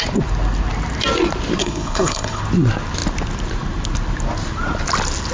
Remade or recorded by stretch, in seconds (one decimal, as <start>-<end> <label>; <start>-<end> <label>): 0.0-1.6 recorded; 1.6-2.4 remade; 2.4-5.3 recorded